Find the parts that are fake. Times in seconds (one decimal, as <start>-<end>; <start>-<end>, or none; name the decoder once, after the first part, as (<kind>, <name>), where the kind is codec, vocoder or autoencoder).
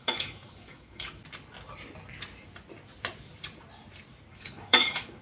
0.0-1.2 (autoencoder, DAC-VAE); 4.3-5.2